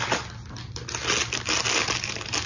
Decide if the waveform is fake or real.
real